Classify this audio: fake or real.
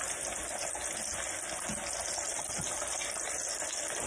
real